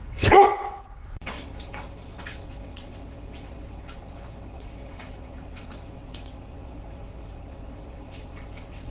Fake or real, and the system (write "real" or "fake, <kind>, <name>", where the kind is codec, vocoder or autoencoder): fake, vocoder, WaveNeXt